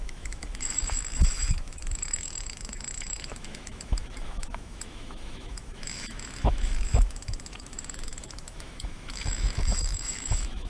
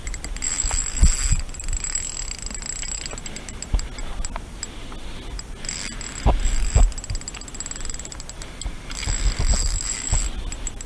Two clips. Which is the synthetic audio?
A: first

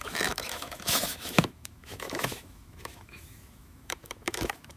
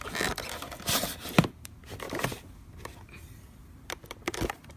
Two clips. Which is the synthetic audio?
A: first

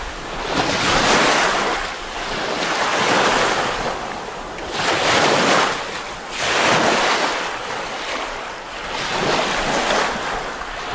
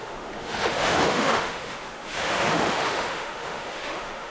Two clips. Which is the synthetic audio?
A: second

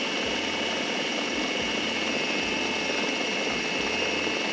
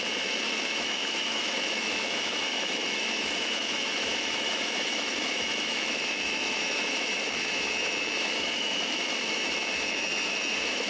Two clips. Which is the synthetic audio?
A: second